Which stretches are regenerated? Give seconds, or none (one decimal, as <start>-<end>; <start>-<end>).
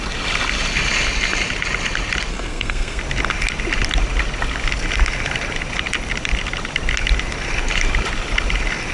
2.3-3.0